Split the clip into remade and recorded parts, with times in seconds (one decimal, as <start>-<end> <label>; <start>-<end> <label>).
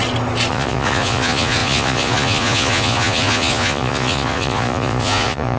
0.0-0.5 recorded; 0.5-5.6 remade